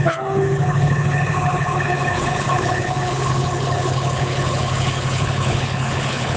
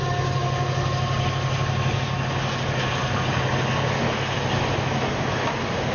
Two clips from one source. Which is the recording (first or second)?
second